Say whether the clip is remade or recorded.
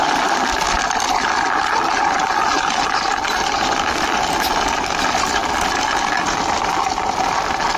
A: recorded